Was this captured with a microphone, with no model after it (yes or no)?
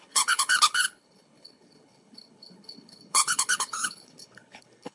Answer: no